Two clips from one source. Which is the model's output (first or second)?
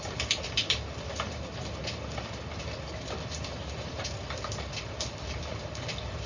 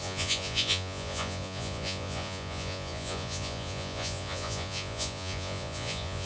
second